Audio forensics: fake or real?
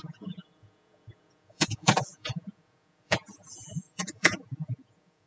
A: fake